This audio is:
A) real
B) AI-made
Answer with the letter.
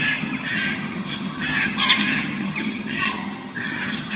B